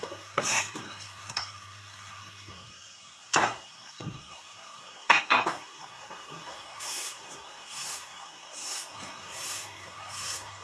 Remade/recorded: remade